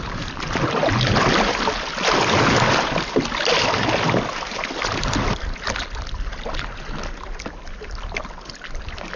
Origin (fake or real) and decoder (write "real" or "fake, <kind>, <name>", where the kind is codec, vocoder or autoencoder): real